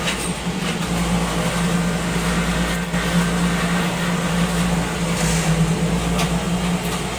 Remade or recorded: recorded